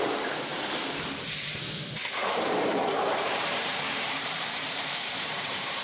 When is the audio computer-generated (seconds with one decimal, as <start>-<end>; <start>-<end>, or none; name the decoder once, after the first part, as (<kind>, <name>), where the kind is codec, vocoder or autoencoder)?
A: 0.5-1.6 (vocoder, BigVGAN v2); 2.2-5.8